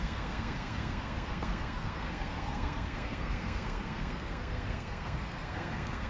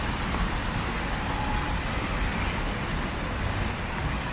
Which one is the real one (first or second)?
second